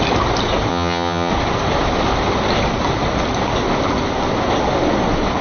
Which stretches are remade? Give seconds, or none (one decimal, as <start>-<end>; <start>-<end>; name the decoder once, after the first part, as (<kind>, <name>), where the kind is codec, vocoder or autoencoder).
0.7-1.3 (vocoder, HiFi-GAN)